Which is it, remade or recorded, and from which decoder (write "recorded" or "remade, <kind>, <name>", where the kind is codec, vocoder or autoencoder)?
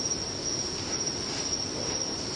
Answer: recorded